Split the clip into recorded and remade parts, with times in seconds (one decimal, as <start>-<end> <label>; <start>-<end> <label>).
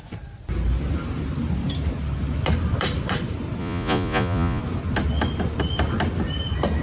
0.0-3.6 recorded; 3.6-4.6 remade; 4.6-6.8 recorded